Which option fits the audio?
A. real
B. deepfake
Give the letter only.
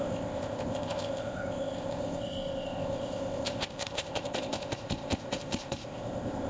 B